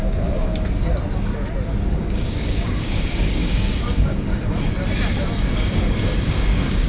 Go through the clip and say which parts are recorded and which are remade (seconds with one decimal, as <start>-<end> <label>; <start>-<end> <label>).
0.0-0.5 remade; 0.5-1.9 recorded; 1.9-4.3 remade; 4.3-5.4 recorded; 5.4-6.9 remade